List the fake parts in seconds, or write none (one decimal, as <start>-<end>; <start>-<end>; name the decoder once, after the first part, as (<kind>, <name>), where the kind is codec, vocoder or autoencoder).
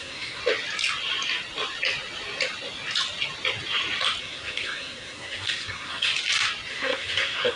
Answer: 0.0-0.4 (codec, SNAC); 4.2-6.1; 6.7-7.6